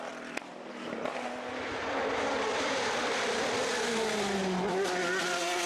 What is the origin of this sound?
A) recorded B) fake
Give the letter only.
A